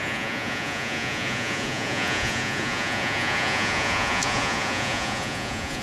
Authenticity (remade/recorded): remade